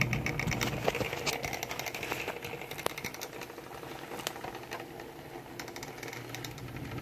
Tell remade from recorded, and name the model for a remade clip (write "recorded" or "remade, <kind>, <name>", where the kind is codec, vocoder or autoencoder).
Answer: recorded